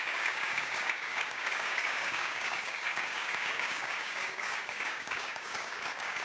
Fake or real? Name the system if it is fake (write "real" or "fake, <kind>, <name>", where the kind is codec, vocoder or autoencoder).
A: fake, codec, DAC